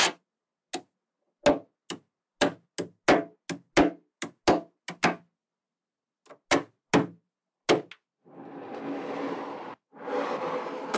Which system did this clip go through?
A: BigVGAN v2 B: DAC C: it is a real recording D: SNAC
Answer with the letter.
C